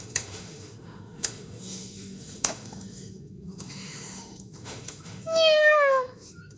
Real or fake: fake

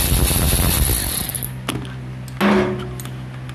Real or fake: real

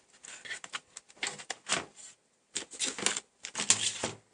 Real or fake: real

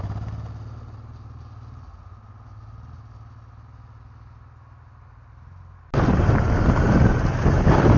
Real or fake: real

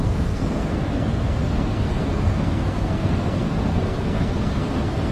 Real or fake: fake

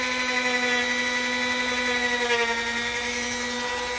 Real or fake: real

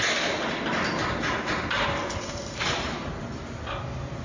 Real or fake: real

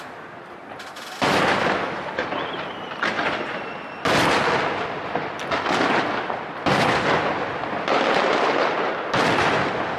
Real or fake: real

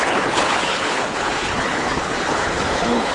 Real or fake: fake